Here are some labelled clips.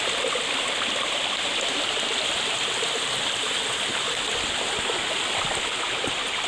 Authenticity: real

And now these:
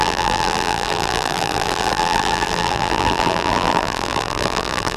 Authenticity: fake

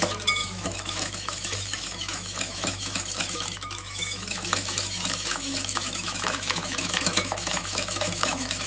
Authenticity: fake